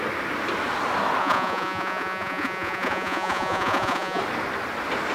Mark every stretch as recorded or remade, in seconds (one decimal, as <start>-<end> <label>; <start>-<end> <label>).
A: 0.0-1.2 recorded; 1.2-4.2 remade; 4.2-5.1 recorded